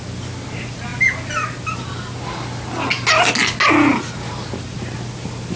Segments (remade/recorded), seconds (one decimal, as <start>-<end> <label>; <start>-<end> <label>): 0.0-5.6 recorded